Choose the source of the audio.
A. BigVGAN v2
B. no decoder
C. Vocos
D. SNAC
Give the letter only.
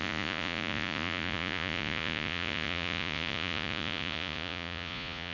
C